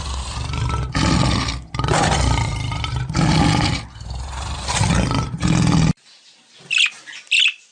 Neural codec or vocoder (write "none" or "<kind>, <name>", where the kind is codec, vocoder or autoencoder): none